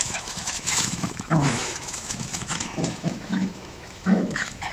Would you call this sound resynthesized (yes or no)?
yes